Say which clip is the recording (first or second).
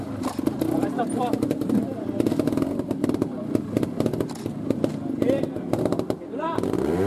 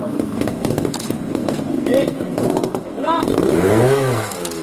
first